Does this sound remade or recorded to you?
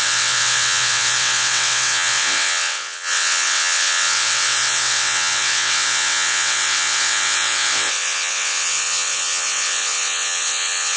remade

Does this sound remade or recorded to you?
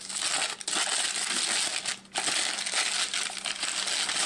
recorded